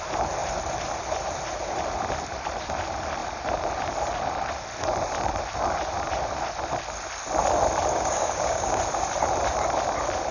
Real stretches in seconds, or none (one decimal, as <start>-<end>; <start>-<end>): 0.0-7.9; 8.8-10.3